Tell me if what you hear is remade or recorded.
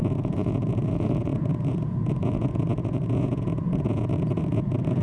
remade